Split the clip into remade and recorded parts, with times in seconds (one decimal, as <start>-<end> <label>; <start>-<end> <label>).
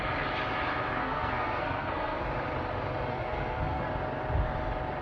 0.0-1.0 recorded; 1.0-2.3 remade; 2.3-3.1 recorded; 3.1-3.9 remade; 3.9-5.0 recorded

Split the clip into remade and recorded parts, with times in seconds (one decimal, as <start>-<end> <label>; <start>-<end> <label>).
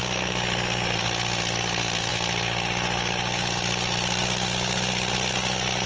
0.0-5.9 recorded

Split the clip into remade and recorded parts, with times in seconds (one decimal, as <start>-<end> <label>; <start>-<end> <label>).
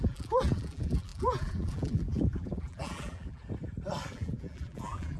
0.0-3.4 remade; 3.4-4.1 recorded; 4.1-5.2 remade